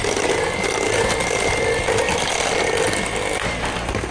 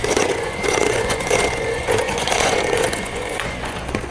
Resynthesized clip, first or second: second